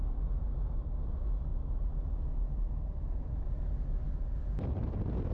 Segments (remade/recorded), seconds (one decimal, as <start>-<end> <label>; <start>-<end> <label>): 0.0-5.3 recorded